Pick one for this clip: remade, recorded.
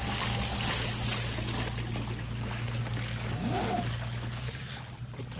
recorded